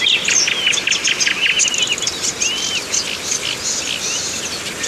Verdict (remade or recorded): recorded